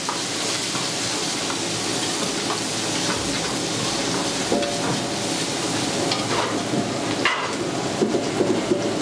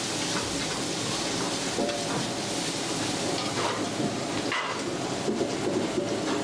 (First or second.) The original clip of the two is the first